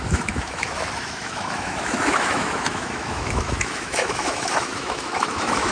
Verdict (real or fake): fake